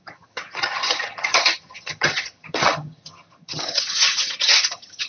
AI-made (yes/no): yes